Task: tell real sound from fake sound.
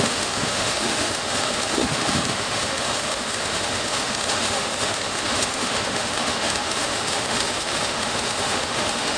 fake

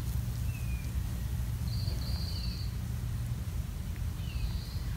real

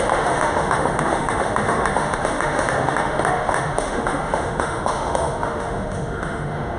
fake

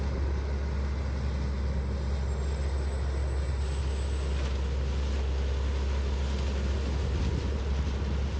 real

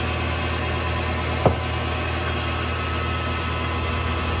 real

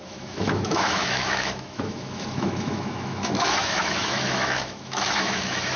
fake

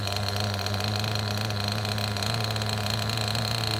real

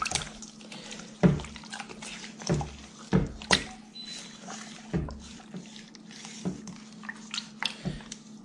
real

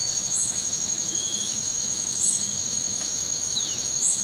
fake